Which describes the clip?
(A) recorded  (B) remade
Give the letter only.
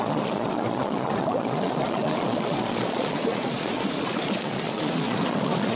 B